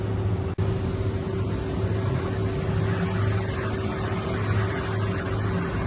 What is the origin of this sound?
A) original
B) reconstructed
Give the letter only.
A